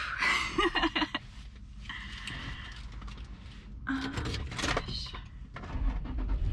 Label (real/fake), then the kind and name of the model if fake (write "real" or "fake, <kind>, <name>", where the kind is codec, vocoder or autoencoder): real